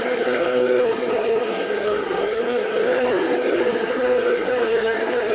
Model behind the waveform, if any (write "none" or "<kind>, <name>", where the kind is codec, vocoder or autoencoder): codec, SNAC